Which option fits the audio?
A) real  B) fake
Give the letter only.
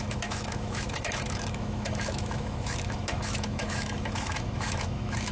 B